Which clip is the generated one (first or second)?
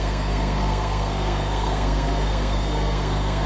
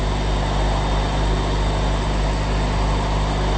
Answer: first